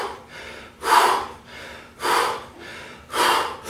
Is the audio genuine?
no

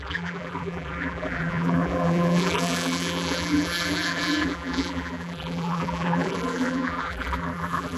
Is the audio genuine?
no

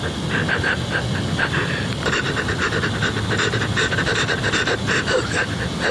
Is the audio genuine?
yes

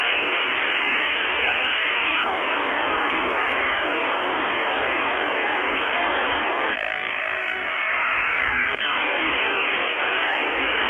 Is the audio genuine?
no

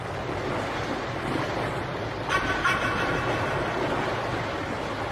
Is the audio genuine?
yes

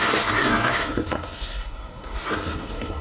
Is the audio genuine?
no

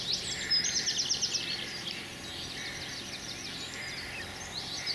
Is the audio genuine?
yes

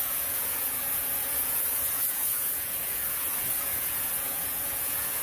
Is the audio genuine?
no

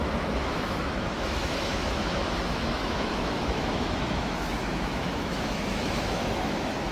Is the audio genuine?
no